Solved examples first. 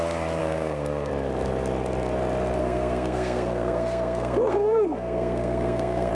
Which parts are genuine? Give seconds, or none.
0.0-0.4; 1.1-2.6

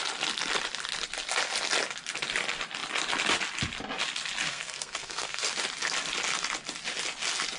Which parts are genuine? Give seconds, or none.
0.0-4.5; 5.5-7.6

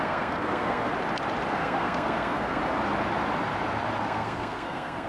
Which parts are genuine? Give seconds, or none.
0.9-1.5; 2.6-4.0

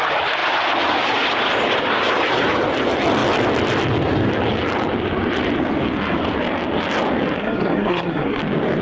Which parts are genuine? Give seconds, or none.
0.0-7.4; 8.4-8.8

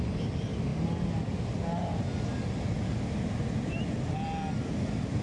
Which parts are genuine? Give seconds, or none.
0.0-5.2

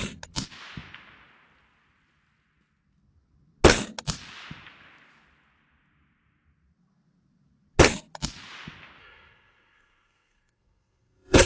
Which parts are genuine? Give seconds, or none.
0.0-9.0

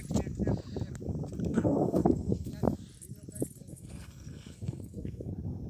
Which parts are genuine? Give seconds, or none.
0.0-1.5; 2.5-3.7; 5.3-5.7